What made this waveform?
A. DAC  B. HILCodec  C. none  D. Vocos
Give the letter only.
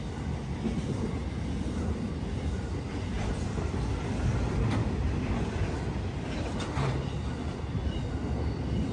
C